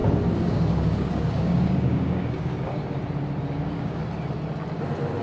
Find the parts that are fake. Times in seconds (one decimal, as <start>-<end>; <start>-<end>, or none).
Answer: 0.0-2.8; 3.5-4.0